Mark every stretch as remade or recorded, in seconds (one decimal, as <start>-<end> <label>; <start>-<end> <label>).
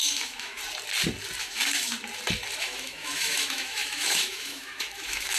0.0-0.6 remade; 0.6-1.4 recorded; 1.4-1.9 remade; 1.9-2.6 recorded; 2.6-5.4 remade